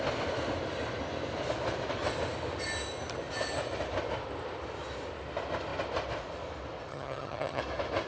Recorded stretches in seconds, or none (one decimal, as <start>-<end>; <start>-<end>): 0.0-6.9; 7.6-8.1